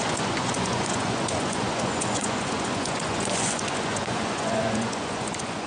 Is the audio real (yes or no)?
no